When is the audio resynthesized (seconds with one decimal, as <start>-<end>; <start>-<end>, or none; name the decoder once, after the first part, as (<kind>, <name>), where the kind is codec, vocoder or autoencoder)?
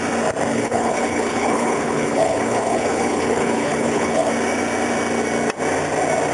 0.5-4.3 (codec, HILCodec)